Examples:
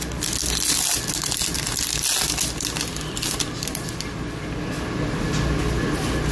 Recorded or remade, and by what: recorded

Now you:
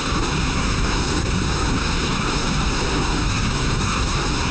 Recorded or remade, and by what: remade, codec, SNAC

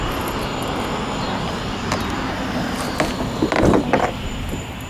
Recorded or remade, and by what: recorded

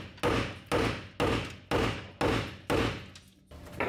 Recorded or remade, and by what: recorded